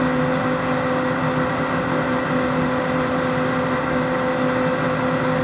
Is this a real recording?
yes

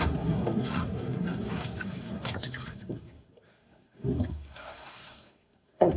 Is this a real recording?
no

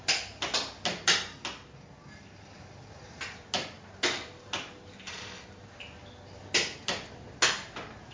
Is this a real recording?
yes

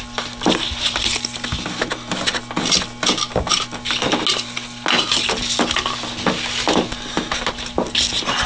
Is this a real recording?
yes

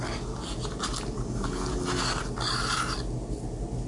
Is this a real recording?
yes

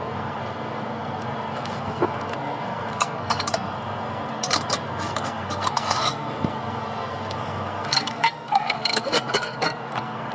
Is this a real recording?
no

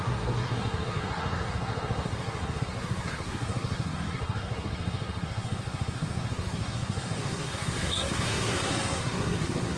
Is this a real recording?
no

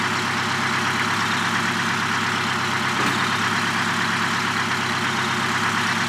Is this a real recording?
yes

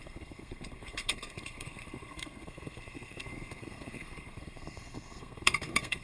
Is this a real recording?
no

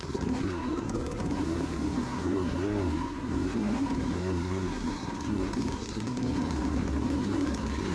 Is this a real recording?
no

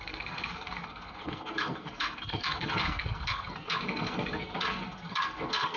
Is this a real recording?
no